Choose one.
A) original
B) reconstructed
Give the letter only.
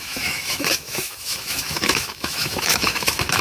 B